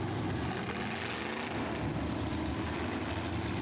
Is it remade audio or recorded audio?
recorded